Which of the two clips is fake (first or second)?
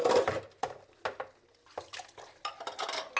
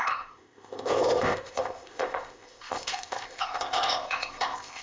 second